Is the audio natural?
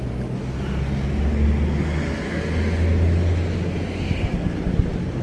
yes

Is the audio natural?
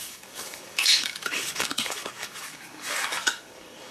no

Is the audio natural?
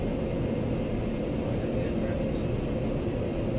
yes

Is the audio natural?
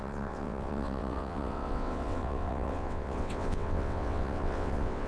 no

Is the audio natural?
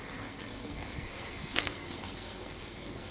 no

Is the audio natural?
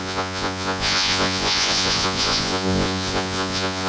no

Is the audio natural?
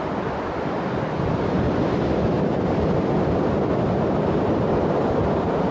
no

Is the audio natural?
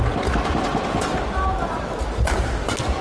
yes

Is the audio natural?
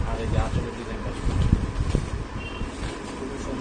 yes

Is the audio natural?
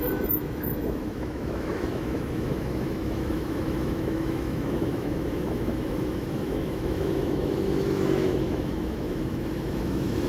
no